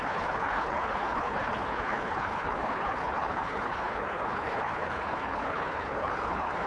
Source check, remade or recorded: remade